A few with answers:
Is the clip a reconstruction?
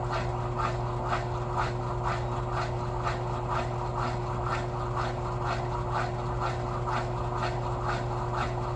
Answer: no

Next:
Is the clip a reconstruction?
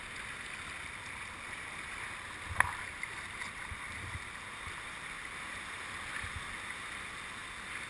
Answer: no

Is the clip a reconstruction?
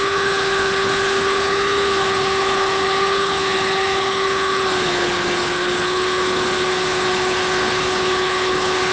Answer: yes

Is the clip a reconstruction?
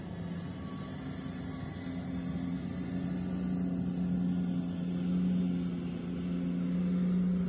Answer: no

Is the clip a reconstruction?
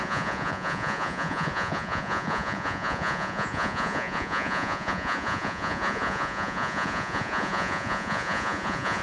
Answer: yes